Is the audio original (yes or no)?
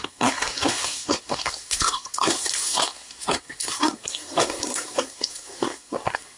no